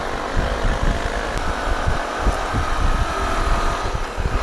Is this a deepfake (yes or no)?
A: no